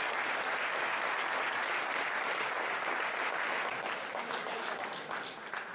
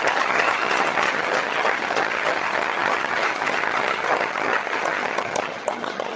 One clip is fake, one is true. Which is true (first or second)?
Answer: first